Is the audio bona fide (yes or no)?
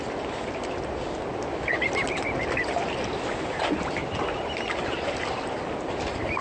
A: yes